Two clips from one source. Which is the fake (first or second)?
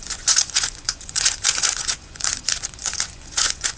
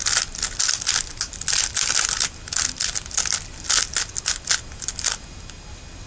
first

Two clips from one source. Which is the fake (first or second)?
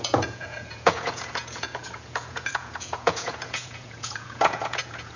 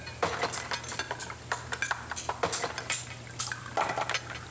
first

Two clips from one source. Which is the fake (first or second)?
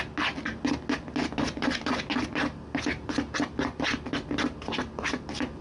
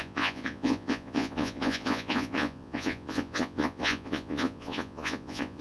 second